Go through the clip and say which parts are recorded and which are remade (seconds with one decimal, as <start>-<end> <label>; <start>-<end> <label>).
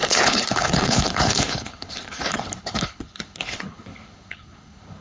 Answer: 0.0-5.0 remade